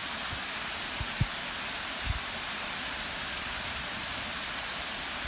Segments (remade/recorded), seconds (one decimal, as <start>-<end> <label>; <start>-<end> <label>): 0.0-5.3 recorded